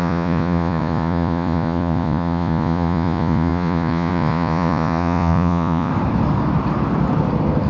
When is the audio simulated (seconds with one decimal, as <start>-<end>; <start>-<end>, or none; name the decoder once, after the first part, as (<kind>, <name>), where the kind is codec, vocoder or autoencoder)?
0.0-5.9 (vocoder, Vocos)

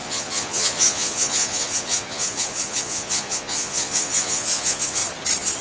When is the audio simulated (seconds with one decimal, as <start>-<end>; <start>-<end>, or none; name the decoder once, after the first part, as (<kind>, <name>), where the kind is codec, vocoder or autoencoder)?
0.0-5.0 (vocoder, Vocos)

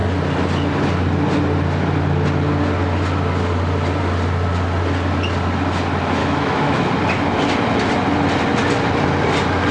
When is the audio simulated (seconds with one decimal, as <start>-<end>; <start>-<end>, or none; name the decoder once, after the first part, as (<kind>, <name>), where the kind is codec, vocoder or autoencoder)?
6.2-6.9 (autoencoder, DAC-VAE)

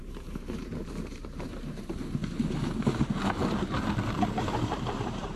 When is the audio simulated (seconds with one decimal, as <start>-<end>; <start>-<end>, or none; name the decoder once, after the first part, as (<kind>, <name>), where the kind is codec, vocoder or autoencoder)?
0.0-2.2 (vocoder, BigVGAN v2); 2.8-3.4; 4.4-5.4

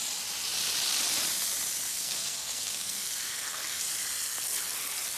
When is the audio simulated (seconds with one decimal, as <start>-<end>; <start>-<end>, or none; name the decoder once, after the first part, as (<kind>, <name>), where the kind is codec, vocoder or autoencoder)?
1.9-3.8 (codec, SNAC)

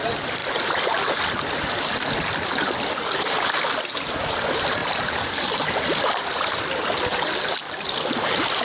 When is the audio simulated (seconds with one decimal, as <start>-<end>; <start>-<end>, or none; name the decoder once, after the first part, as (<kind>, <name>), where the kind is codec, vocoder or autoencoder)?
none